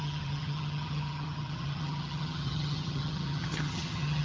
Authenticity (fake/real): fake